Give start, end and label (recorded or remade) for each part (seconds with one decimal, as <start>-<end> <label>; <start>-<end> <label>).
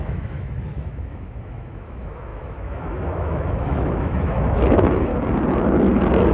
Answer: 0.0-5.1 remade; 5.1-6.3 recorded